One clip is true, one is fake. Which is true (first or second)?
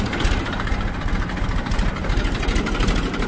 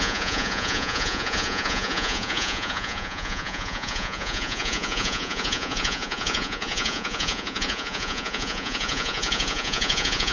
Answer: first